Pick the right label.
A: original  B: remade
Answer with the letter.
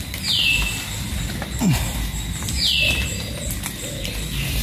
A